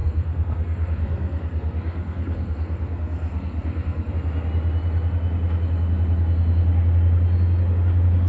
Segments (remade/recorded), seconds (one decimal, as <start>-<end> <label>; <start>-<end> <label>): 0.0-4.1 remade; 4.1-8.3 recorded

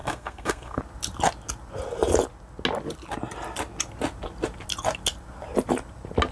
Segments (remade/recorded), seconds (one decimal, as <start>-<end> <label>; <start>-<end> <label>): 0.0-0.8 remade; 0.8-6.3 recorded

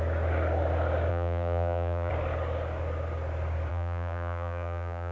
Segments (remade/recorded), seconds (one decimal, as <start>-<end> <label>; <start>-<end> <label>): 0.0-1.1 recorded; 1.1-2.1 remade; 2.1-3.7 recorded; 3.7-5.1 remade

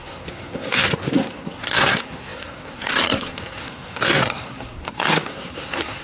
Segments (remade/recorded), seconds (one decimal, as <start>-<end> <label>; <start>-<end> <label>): 0.0-6.0 remade